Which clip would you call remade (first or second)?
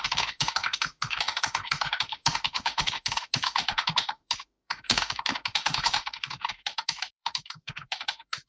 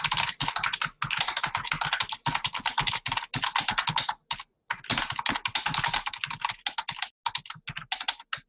first